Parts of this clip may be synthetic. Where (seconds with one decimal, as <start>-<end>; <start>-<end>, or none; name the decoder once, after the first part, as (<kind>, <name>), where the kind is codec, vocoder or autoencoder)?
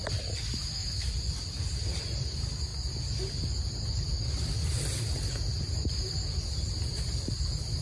0.6-1.1 (autoencoder, DAC-VAE)